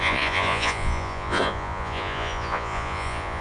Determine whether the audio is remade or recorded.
remade